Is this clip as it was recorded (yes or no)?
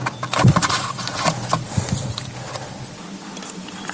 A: yes